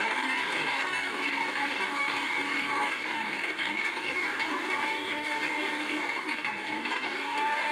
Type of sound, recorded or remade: remade